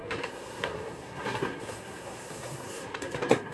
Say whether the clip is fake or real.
fake